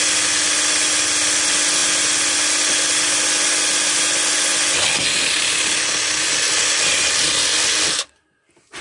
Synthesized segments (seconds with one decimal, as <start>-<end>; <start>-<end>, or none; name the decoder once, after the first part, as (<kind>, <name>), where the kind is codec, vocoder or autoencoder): none